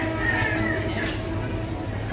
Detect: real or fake real